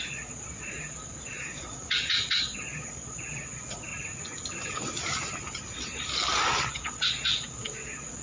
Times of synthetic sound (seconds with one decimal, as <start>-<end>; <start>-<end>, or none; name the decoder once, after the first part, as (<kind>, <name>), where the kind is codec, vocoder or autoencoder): 0.0-3.9 (vocoder, Vocos); 6.7-8.2